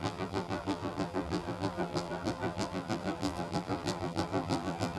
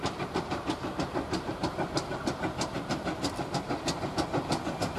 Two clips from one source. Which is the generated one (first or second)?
first